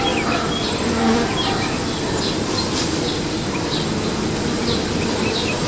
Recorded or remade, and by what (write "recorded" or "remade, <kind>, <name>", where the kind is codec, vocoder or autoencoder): recorded